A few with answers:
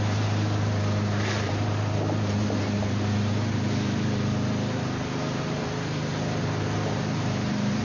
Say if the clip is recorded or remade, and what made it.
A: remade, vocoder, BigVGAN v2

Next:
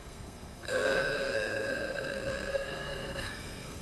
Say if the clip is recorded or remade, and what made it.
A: remade, codec, SNAC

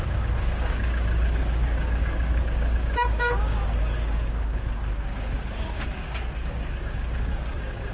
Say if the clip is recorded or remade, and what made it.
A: remade, codec, DAC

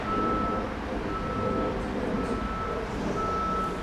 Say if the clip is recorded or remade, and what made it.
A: recorded